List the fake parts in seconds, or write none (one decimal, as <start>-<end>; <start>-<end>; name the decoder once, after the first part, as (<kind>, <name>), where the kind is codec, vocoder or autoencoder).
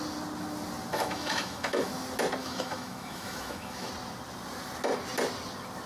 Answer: 0.9-1.9 (autoencoder, DAC-VAE); 2.4-3.9